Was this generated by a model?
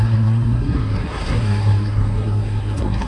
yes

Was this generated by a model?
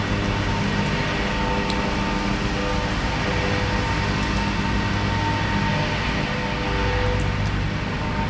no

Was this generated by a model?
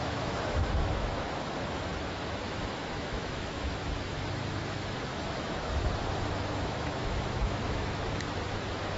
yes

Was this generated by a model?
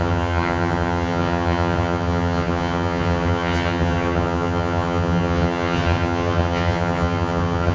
yes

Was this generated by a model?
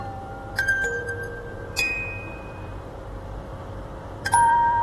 yes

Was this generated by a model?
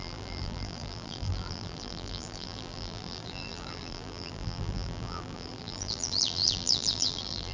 yes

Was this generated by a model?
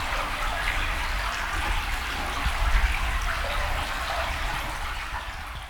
no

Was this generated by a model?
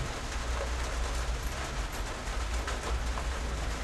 no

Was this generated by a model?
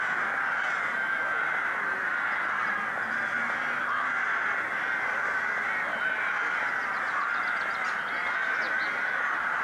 no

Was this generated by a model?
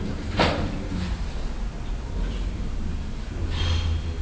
no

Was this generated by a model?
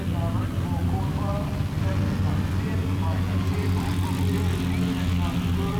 no